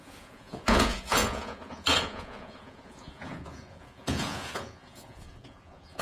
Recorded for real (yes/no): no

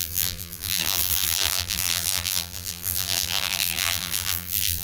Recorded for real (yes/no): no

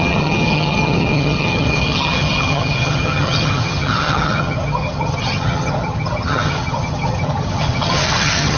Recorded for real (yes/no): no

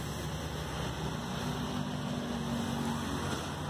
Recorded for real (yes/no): yes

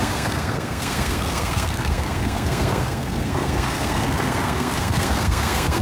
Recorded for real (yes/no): no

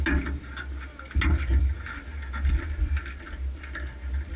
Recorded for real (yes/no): yes